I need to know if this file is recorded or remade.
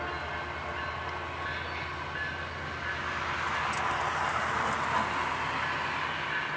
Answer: recorded